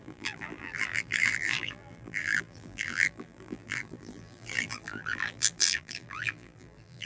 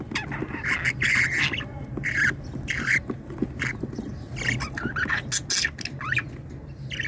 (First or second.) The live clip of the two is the second